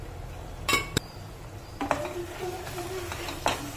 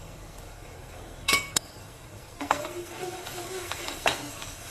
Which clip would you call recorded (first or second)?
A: first